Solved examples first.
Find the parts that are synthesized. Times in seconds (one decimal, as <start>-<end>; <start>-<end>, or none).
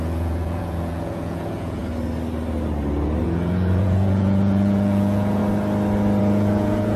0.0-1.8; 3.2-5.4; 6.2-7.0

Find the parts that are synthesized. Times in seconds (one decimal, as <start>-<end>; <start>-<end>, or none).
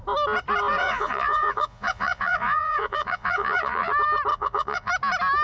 0.8-3.9; 4.3-4.9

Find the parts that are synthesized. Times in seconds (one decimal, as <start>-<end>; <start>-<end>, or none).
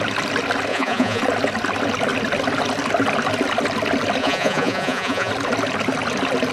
0.7-1.2; 4.2-5.3